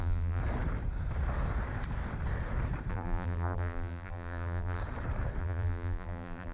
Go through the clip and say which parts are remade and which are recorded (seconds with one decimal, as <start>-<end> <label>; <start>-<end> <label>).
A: 0.0-0.4 remade; 0.4-2.9 recorded; 2.9-4.8 remade; 4.8-5.4 recorded; 5.4-6.5 remade